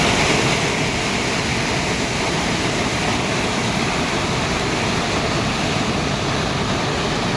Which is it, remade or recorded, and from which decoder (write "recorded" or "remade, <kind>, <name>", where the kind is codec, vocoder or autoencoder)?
recorded